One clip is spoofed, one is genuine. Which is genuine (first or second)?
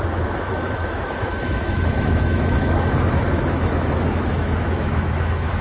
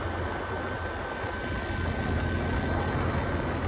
second